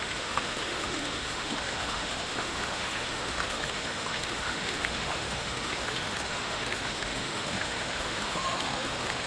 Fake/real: fake